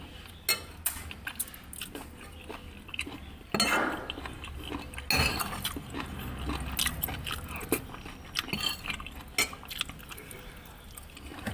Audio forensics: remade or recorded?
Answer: recorded